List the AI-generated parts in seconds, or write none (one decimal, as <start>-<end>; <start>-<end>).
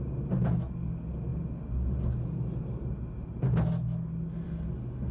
none